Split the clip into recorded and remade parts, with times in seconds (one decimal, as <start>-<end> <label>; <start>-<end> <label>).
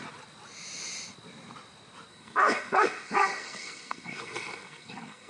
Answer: 0.0-2.1 recorded; 2.1-5.3 remade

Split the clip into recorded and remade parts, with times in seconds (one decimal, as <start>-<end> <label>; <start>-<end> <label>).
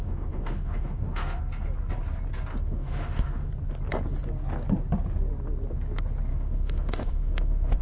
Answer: 0.0-1.4 remade; 1.4-2.5 recorded; 2.5-3.5 remade; 3.5-6.3 recorded; 6.3-7.8 remade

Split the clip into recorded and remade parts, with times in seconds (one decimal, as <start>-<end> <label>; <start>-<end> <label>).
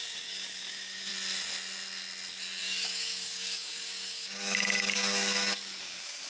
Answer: 0.0-1.1 remade; 1.1-2.6 recorded; 2.6-6.3 remade